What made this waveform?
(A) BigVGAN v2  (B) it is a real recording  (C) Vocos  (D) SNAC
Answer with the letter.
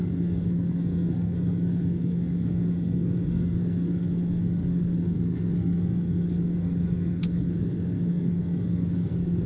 D